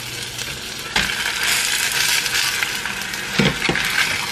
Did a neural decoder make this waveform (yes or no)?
no